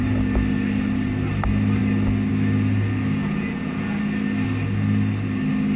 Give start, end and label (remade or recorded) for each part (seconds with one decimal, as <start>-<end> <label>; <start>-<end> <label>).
0.0-3.2 recorded; 3.2-4.0 remade; 4.0-5.8 recorded